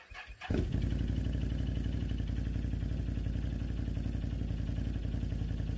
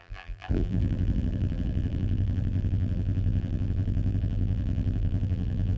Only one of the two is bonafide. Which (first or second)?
first